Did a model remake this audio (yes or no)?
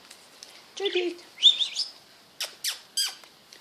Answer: no